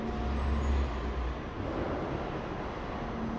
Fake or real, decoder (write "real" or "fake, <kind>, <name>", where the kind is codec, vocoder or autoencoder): real